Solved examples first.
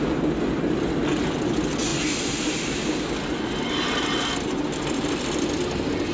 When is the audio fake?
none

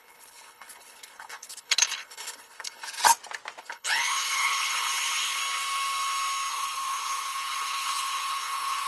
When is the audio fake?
0.0-3.0 (codec, HILCodec); 3.6-5.4; 6.5-8.9

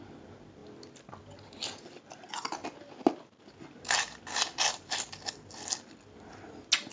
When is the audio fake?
none

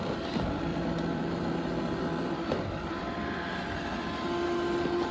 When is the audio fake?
0.7-3.8 (vocoder, BigVGAN v2)